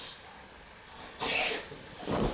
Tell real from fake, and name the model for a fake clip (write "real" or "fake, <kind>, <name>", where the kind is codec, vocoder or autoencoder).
real